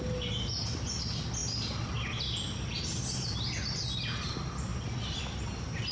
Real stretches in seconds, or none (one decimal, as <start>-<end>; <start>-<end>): 0.0-5.9